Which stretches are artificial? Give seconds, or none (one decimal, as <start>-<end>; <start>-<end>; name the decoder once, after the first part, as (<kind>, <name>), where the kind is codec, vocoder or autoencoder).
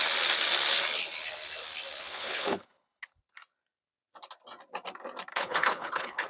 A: 2.0-3.0 (codec, HILCodec); 5.3-6.3